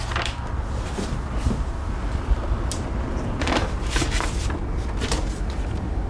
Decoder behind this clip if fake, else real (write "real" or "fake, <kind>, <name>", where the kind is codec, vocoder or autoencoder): real